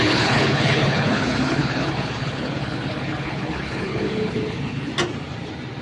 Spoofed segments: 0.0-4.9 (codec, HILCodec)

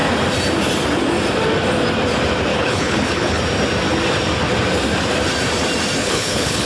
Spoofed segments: 2.5-3.4 (codec, HILCodec); 6.0-6.7

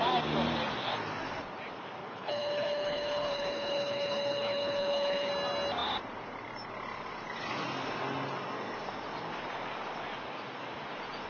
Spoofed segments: 2.0-5.3 (codec, HILCodec)

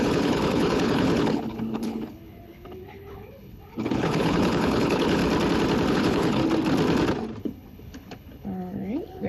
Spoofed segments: 0.0-5.2 (codec, HILCodec); 5.9-6.4; 7.4-9.3

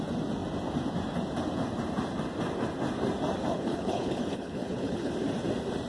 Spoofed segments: 3.5-5.1 (codec, HILCodec)

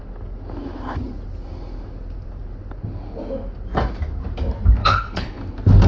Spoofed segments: 4.8-5.4 (codec, HILCodec)